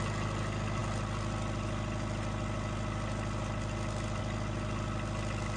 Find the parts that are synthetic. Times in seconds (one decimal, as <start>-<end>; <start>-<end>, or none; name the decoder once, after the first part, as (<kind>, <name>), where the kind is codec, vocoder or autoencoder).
none